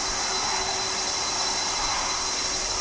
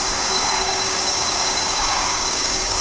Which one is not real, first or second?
second